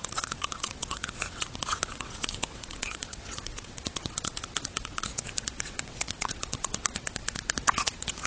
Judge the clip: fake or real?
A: fake